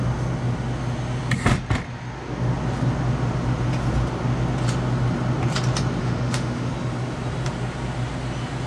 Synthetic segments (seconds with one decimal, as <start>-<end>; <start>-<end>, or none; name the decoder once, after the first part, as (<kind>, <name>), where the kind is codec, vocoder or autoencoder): 6.0-6.7 (autoencoder, DAC-VAE)